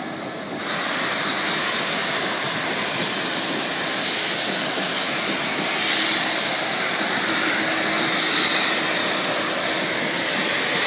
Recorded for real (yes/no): yes